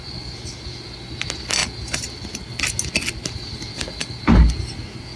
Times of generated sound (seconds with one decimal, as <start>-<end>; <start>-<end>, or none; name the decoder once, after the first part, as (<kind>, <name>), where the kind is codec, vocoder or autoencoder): none

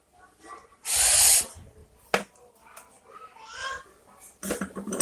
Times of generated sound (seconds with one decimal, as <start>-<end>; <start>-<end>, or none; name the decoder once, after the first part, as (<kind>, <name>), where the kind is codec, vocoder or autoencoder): 0.7-1.3 (vocoder, BigVGAN v2); 3.6-5.0

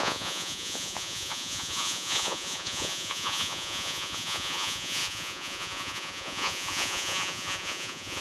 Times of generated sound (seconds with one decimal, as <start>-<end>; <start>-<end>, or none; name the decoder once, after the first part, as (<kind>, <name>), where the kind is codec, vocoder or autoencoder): 0.0-8.2 (vocoder, Vocos)

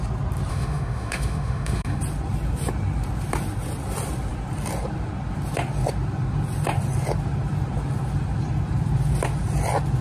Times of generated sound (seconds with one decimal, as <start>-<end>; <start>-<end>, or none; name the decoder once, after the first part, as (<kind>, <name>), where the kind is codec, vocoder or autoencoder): 0.5-2.0 (autoencoder, DAC-VAE)